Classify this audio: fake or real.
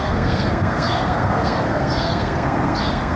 fake